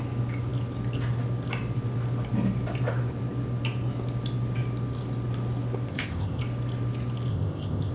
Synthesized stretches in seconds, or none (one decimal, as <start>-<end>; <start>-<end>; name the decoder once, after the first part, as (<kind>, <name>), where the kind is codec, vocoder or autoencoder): 5.9-6.4 (codec, ZipCodec); 7.3-7.9